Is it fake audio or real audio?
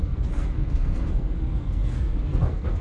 fake